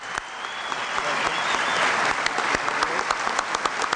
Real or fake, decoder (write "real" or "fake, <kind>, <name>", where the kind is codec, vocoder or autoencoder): real